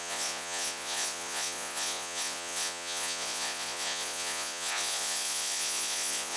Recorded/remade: remade